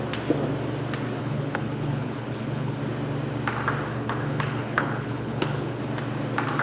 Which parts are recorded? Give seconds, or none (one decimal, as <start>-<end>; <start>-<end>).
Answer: 0.0-1.2; 2.8-3.9; 5.8-6.6